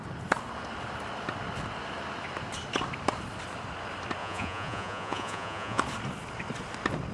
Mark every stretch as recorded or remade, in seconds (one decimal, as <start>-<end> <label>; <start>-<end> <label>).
0.0-4.2 recorded; 4.2-5.8 remade; 5.8-7.1 recorded